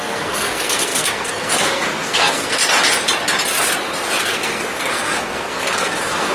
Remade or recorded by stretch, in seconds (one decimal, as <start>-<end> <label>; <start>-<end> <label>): 0.0-2.6 remade; 2.6-4.2 recorded; 4.2-6.3 remade